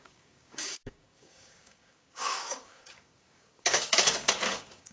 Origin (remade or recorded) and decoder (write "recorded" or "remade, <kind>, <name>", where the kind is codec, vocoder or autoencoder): remade, codec, DAC